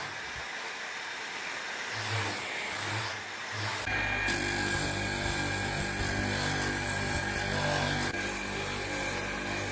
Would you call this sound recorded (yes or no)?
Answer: yes